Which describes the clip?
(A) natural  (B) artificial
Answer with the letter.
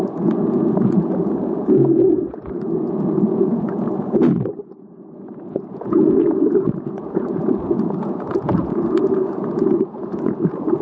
B